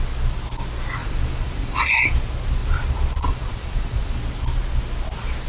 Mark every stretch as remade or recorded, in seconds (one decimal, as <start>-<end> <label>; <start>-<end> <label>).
0.0-1.0 recorded; 1.0-2.0 remade; 2.0-2.6 recorded; 2.6-4.2 remade; 4.2-5.5 recorded